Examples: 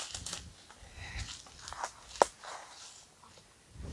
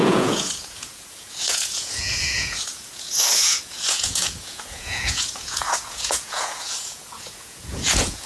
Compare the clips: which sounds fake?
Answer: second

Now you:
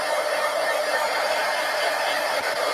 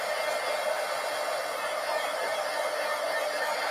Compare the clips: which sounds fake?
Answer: first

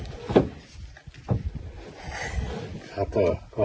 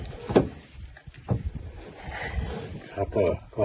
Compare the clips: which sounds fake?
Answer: second